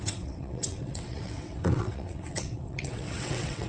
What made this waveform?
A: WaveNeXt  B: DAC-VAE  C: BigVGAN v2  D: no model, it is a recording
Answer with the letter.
A